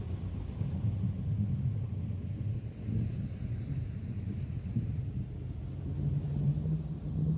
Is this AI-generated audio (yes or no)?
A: no